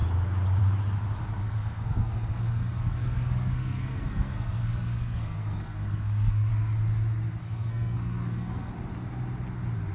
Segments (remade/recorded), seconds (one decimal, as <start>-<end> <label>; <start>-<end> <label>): 0.0-1.4 recorded; 1.4-6.5 remade; 6.5-7.4 recorded; 7.4-8.7 remade; 8.7-9.9 recorded